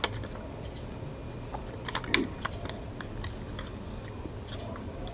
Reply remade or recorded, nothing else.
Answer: recorded